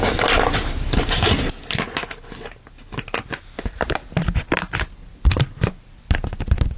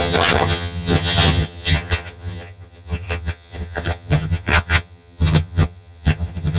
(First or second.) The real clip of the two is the first